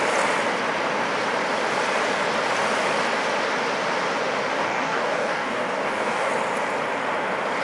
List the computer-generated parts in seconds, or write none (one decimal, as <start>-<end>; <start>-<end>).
4.6-6.3